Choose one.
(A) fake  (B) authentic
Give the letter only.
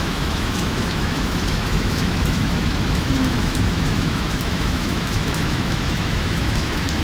A